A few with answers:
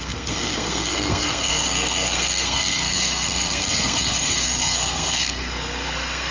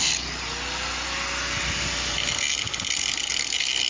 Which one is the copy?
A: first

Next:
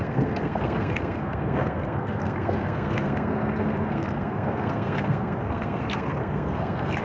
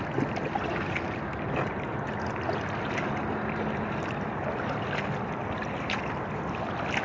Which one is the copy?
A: first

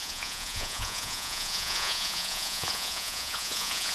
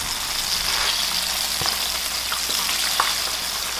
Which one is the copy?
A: first